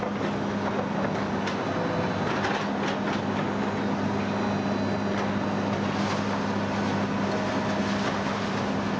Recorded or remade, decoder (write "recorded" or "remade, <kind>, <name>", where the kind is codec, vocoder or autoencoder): recorded